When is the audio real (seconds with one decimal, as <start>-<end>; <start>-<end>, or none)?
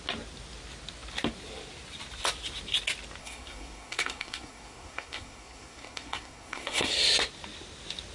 0.0-3.2; 6.9-8.1